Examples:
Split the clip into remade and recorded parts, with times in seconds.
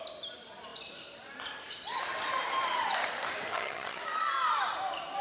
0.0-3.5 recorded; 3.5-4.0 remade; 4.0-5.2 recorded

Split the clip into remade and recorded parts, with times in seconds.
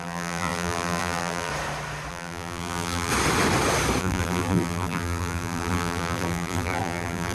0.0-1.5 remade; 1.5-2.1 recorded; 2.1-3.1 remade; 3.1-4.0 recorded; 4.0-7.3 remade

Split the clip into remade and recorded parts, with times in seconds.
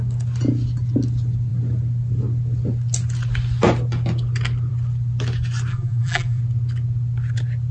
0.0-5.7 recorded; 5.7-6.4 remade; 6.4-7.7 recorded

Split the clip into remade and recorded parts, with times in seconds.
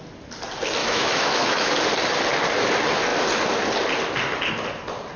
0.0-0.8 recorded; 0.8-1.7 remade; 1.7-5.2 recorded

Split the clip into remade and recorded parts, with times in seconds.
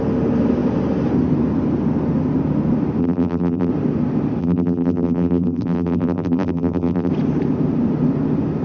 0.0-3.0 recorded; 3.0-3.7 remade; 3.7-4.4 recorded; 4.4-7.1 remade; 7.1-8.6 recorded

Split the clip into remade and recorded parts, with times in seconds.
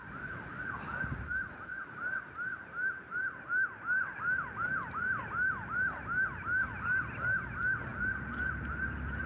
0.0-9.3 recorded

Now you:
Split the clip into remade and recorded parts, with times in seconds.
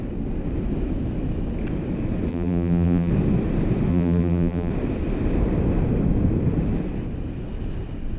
0.0-2.3 recorded; 2.3-3.1 remade; 3.1-3.9 recorded; 3.9-4.7 remade; 4.7-8.2 recorded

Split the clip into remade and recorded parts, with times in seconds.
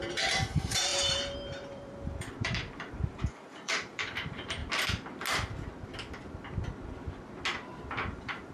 0.0-4.6 remade; 4.6-7.9 recorded; 7.9-8.5 remade